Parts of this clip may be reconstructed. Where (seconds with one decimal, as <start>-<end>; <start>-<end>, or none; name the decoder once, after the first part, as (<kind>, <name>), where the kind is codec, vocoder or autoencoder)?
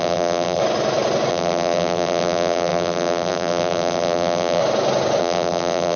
0.0-0.6 (vocoder, BigVGAN v2); 1.3-4.6; 5.2-6.0